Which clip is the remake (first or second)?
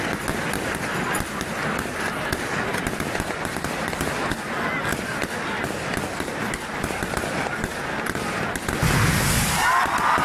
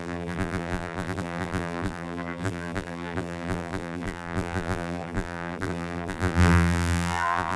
second